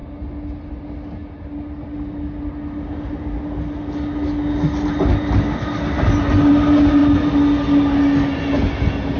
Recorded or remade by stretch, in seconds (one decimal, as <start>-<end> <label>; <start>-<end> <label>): 0.0-9.2 recorded